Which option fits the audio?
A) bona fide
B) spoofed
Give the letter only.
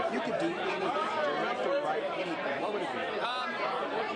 B